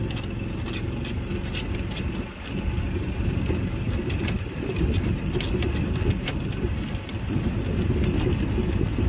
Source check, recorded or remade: recorded